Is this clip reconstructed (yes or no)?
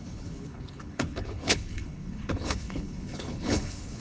yes